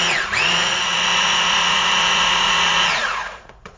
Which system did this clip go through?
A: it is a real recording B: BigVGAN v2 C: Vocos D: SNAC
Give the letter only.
C